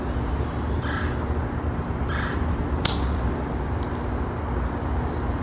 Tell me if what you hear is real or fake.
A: real